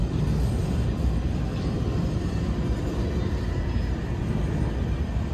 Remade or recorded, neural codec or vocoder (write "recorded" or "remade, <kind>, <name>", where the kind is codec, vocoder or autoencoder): recorded